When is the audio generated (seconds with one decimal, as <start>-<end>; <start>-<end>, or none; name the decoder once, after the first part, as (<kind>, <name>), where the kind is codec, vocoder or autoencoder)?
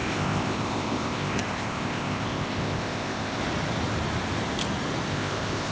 0.0-3.4 (codec, ZipCodec); 5.1-5.7